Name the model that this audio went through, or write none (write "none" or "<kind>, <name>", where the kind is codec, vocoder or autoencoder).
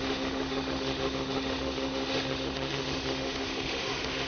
autoencoder, DAC-VAE